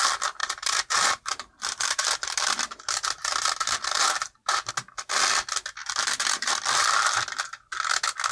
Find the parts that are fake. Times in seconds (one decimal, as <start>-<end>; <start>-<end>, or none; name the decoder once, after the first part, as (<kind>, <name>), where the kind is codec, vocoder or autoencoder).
0.4-4.7 (vocoder, BigVGAN v2); 5.8-6.5